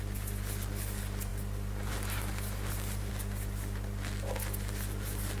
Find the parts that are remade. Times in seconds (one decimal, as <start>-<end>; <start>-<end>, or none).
none